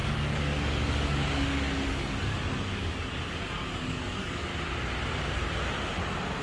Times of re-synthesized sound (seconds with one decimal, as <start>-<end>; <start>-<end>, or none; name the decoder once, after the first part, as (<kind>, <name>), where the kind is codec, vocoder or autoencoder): 0.0-4.5 (codec, DAC)